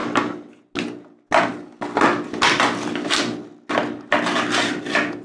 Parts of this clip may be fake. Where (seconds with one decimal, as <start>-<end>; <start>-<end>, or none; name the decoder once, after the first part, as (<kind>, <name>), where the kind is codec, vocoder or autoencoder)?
none